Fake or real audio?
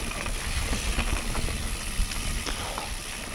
real